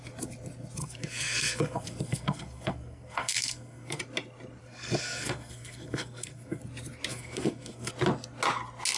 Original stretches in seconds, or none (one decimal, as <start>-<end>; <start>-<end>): 0.0-0.8; 4.0-4.6; 6.6-7.1; 7.9-9.0